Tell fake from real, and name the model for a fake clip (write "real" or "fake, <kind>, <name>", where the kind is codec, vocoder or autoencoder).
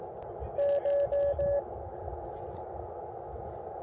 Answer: real